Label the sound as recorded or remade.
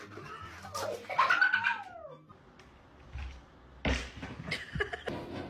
recorded